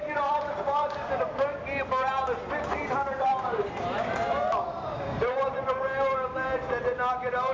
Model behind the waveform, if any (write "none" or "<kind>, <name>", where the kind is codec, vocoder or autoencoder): vocoder, BigVGAN v2